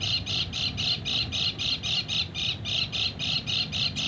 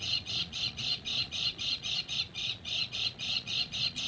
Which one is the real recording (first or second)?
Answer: first